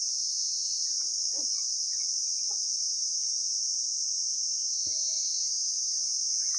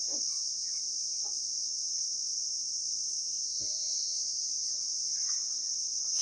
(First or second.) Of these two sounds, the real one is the first